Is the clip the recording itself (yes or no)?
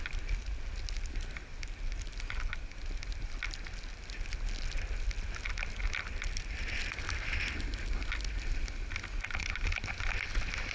yes